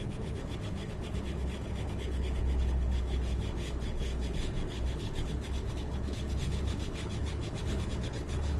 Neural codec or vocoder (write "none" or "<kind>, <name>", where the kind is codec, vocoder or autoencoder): codec, HILCodec